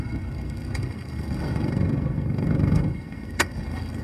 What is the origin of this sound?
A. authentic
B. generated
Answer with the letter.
B